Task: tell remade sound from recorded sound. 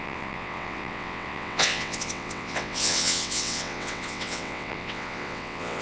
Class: remade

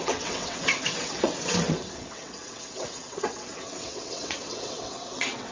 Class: remade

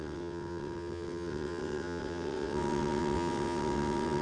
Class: remade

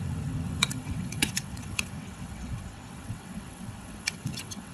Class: remade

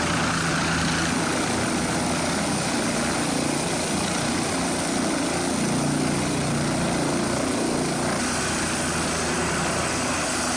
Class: recorded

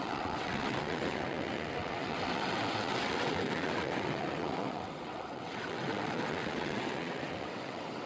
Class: remade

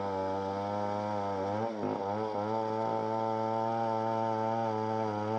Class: recorded